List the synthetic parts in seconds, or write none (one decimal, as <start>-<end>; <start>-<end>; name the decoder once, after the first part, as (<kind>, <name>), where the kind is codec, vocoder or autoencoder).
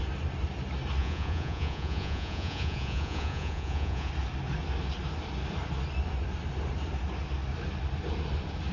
1.0-4.1 (vocoder, Vocos)